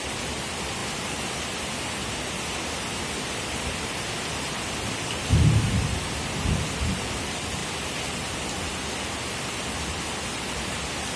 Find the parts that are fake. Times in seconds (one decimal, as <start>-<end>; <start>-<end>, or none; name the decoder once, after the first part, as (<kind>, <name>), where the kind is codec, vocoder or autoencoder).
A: none